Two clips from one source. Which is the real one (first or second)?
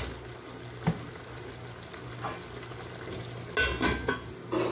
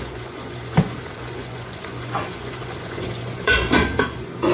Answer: first